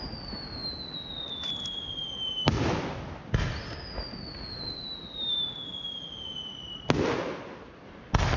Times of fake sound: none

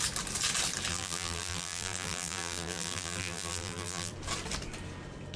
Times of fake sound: 0.9-4.1 (vocoder, BigVGAN v2)

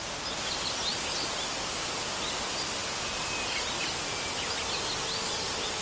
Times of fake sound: none

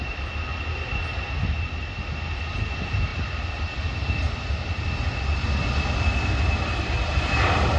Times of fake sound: 3.1-5.2 (vocoder, BigVGAN v2)

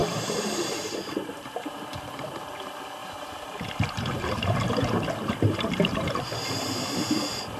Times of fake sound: 0.0-2.5 (vocoder, BigVGAN v2); 3.0-7.1

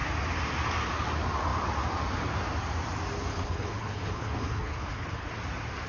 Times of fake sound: 3.3-5.3 (codec, HILCodec)

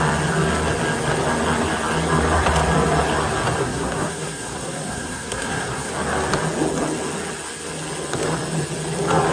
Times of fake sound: 3.6-5.9 (codec, SNAC)

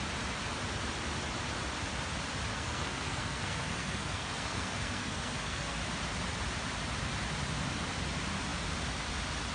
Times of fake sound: 2.5-5.8 (codec, SNAC)